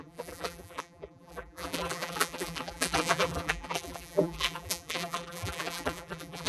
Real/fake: fake